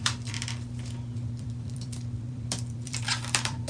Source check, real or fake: fake